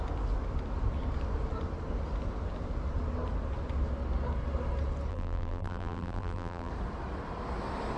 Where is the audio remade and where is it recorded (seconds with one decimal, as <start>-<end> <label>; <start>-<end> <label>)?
0.0-5.1 recorded; 5.1-6.7 remade; 6.7-8.0 recorded